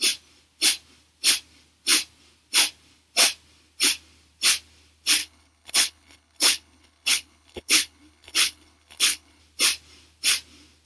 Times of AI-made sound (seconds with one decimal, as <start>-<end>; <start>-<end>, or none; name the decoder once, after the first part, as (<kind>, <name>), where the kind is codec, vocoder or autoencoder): 5.2-9.4 (codec, HILCodec)